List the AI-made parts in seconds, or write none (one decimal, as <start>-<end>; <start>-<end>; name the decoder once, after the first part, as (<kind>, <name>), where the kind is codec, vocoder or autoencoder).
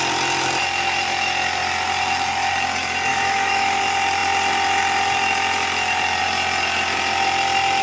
3.1-3.8 (autoencoder, DAC-VAE)